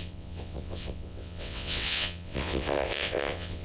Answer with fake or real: fake